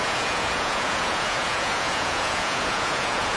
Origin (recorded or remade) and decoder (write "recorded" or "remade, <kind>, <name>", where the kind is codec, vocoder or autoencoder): remade, vocoder, Vocos